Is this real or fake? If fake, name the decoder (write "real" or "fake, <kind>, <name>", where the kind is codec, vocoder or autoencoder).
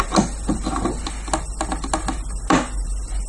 real